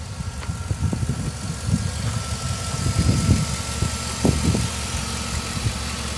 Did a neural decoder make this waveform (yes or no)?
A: no